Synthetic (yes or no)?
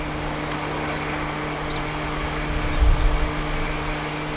no